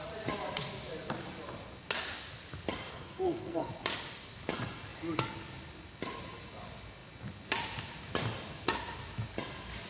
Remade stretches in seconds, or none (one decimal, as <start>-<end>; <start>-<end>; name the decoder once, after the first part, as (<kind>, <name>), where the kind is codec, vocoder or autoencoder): 2.9-3.7 (codec, SNAC)